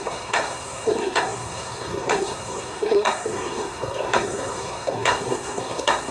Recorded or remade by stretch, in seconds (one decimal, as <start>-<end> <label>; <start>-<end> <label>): 0.0-6.1 remade